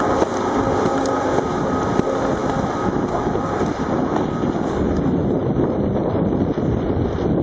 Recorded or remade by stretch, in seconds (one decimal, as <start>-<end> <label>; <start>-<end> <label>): 0.0-7.4 recorded